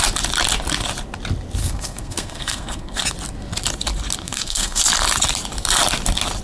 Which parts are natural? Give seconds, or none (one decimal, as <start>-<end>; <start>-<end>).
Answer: 0.0-1.6; 3.0-4.2; 4.8-6.4